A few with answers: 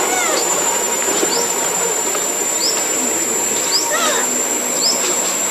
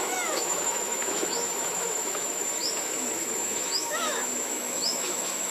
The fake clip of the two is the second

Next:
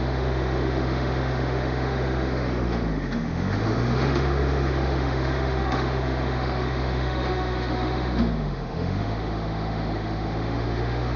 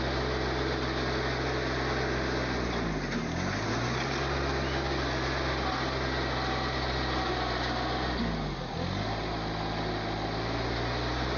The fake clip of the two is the first